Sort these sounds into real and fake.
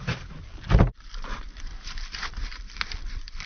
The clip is fake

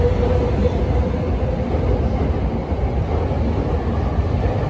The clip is real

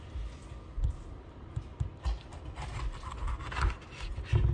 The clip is real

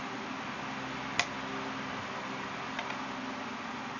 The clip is real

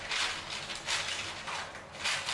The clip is real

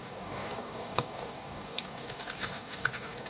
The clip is fake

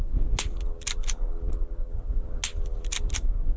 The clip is real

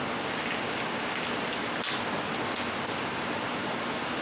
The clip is real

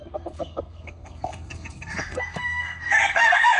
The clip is fake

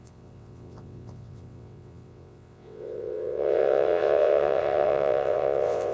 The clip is fake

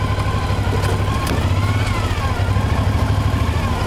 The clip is real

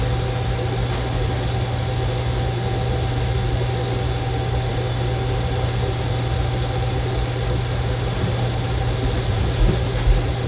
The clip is real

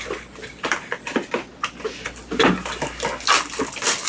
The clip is real